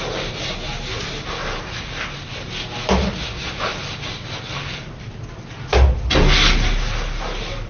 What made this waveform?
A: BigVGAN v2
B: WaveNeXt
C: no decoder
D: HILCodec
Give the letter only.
C